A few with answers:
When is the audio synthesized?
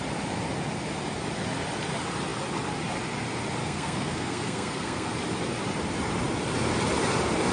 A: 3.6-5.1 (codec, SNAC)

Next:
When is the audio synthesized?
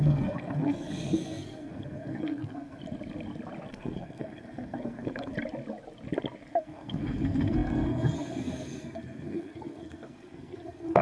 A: 0.0-2.8 (codec, SNAC); 3.7-5.3; 6.6-11.0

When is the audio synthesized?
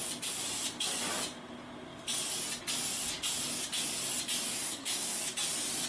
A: 4.5-5.2 (codec, SNAC)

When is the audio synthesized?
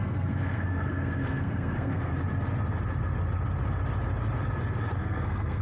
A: 0.0-2.1 (codec, SNAC); 5.0-5.6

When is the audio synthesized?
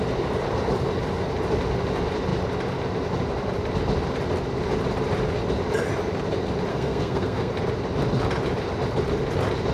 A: 6.7-7.5 (codec, SNAC)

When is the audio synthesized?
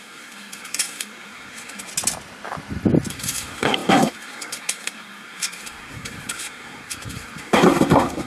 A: 0.0-1.9 (codec, SNAC); 3.1-8.3